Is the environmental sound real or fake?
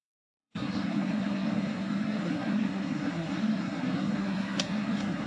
fake